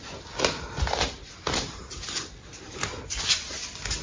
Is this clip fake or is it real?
real